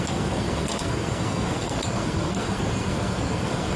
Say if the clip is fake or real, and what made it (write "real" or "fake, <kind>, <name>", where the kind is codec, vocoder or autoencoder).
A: fake, codec, SNAC